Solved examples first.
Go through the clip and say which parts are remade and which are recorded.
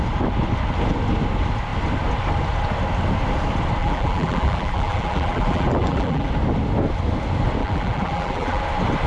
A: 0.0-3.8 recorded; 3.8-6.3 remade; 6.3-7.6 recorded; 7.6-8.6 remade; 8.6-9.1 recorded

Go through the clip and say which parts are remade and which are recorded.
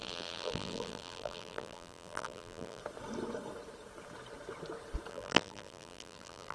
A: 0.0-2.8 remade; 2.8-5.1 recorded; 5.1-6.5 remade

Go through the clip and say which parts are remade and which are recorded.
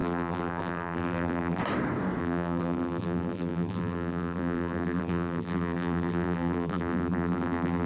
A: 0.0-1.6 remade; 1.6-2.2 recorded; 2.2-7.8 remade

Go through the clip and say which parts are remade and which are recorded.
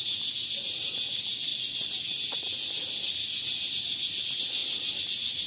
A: 0.0-1.5 remade; 1.5-2.3 recorded; 2.3-4.6 remade; 4.6-5.5 recorded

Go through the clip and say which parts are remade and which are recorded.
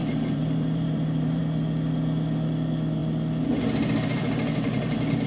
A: 0.0-1.4 remade; 1.4-4.1 recorded; 4.1-4.8 remade; 4.8-5.3 recorded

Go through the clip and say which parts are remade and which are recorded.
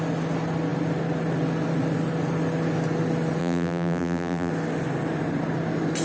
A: 0.0-3.4 recorded; 3.4-4.5 remade; 4.5-6.0 recorded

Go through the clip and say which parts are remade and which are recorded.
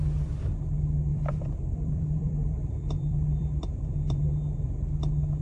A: 0.0-1.1 recorded; 1.1-4.3 remade; 4.3-5.4 recorded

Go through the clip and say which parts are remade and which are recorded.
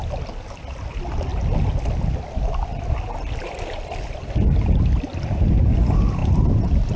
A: 0.0-6.2 recorded; 6.2-7.0 remade